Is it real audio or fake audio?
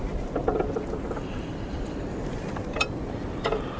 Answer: real